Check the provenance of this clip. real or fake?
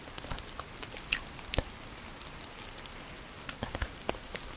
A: real